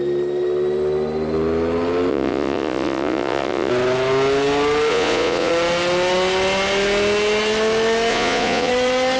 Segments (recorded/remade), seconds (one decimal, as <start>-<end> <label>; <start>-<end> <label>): 0.0-2.1 recorded; 2.1-3.7 remade; 3.7-4.9 recorded; 4.9-5.5 remade; 5.5-8.1 recorded; 8.1-8.7 remade; 8.7-9.2 recorded